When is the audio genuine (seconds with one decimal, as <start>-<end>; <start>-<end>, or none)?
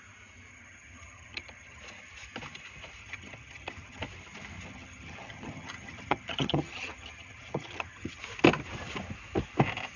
0.0-0.5; 1.8-3.0; 4.0-4.7; 8.2-10.0